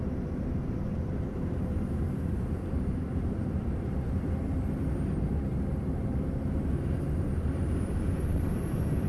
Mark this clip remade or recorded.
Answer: remade